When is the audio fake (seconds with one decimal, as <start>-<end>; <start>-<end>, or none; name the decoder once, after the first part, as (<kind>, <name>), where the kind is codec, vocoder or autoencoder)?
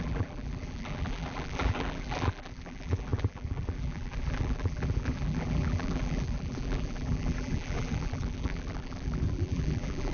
0.0-10.1 (vocoder, BigVGAN v2)